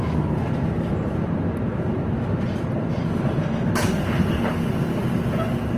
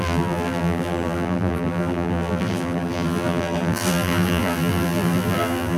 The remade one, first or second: second